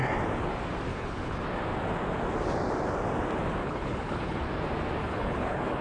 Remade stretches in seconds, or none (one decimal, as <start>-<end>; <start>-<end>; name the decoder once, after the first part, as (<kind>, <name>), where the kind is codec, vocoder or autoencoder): 0.9-1.4 (codec, HILCodec); 3.6-4.5; 5.0-5.8